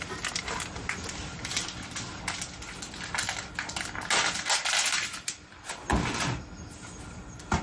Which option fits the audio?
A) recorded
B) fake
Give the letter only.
A